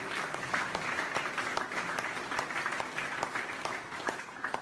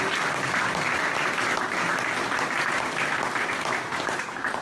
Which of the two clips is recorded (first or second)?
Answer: second